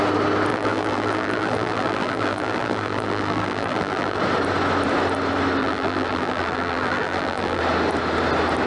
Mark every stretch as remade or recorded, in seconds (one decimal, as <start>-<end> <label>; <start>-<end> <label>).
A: 0.0-0.5 recorded; 0.5-4.2 remade; 4.2-5.6 recorded; 5.6-7.6 remade; 7.6-8.7 recorded